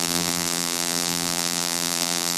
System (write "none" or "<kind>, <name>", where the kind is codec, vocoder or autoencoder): vocoder, BigVGAN v2